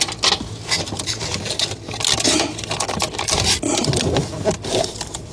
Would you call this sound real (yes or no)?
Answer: yes